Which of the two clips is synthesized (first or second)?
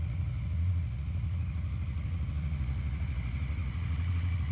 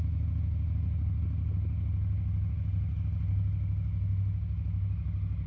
first